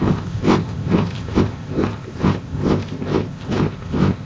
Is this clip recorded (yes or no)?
no